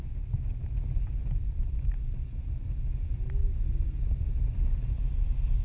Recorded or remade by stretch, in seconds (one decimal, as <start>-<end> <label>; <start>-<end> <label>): 0.0-5.6 recorded